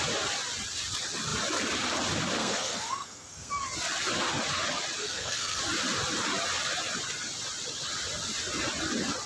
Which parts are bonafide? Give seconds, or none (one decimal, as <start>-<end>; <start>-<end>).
0.0-2.4; 3.5-5.0; 5.6-9.3

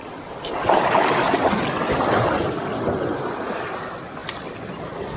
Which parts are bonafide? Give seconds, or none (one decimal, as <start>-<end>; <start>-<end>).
0.0-5.2

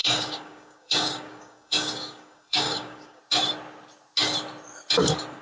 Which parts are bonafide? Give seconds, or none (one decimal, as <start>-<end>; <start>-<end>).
3.2-5.4

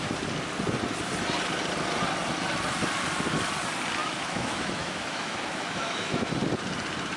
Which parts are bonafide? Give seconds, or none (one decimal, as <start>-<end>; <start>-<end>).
0.0-4.0; 6.3-7.2

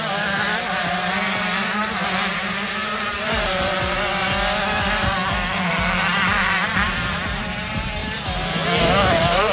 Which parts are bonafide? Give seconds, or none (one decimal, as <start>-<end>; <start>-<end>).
8.0-8.8